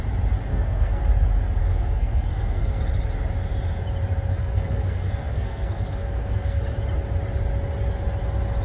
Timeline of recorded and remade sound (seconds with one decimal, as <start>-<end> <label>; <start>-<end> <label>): 0.0-0.5 recorded; 0.5-1.0 remade; 1.0-1.6 recorded; 1.6-2.8 remade; 2.8-4.4 recorded; 4.4-6.6 remade; 6.6-8.6 recorded